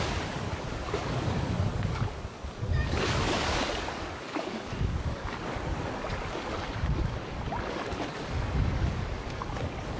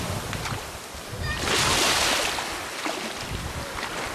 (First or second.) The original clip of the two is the second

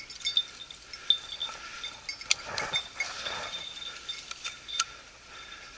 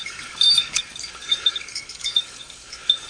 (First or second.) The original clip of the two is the first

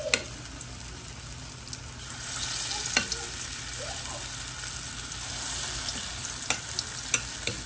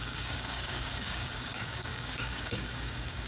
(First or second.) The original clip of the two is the first